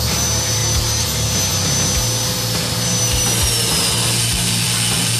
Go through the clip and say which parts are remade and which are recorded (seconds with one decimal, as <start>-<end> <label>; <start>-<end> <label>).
0.0-5.2 recorded